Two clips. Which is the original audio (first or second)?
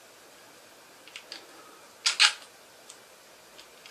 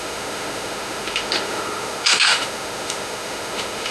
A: first